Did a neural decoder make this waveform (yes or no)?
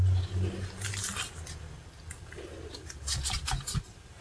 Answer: no